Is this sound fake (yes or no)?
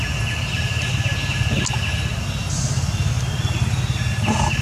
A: no